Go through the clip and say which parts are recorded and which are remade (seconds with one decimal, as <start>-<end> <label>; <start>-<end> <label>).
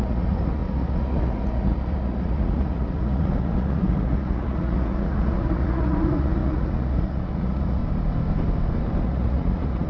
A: 0.0-7.8 remade; 7.8-9.0 recorded; 9.0-9.9 remade